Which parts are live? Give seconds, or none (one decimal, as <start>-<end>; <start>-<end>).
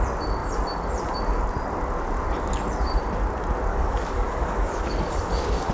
0.0-3.7